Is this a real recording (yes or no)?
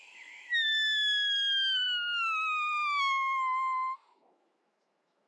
no